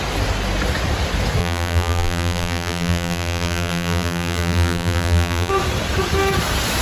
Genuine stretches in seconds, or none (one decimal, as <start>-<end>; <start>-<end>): 0.0-1.4; 5.5-6.8